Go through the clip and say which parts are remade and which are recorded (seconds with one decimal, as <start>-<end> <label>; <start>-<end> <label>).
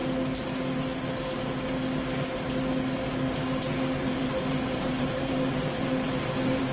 0.0-4.0 recorded; 4.0-6.7 remade